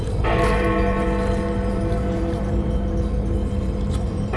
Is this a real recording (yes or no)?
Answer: no